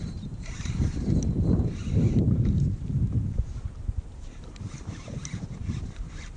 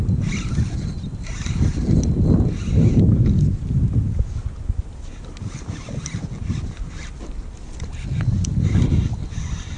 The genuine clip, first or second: second